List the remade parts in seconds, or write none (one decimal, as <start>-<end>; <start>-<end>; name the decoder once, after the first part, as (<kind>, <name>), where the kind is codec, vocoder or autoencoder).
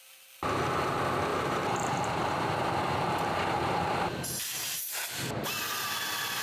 1.3-4.9 (vocoder, BigVGAN v2)